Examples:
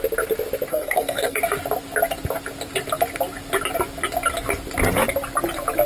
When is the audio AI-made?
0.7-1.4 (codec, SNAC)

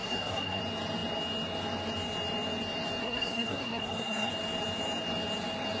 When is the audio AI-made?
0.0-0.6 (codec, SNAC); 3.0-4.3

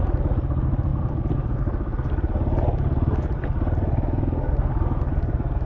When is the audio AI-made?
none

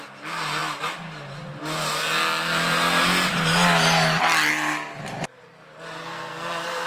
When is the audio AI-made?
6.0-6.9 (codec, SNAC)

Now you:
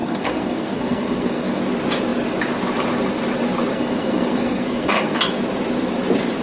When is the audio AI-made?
0.0-1.6 (codec, SNAC); 3.7-5.2